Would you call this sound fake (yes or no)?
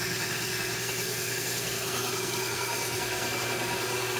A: yes